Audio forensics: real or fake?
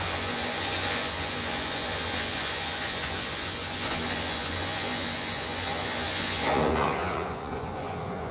fake